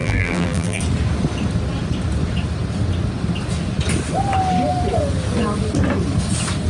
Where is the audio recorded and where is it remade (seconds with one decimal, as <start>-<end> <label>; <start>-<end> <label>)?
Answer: 0.0-0.8 remade; 0.8-6.7 recorded